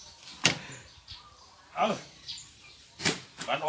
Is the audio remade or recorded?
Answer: remade